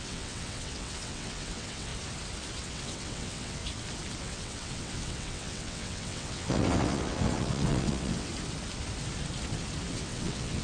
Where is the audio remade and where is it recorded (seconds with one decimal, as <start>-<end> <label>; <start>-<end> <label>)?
0.0-1.9 remade; 1.9-2.6 recorded; 2.6-3.6 remade; 3.6-4.2 recorded; 4.2-8.3 remade; 8.3-9.9 recorded; 9.9-10.6 remade